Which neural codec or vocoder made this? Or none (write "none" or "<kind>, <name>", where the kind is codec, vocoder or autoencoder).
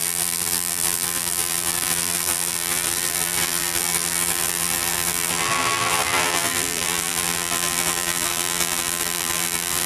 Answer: vocoder, BigVGAN v2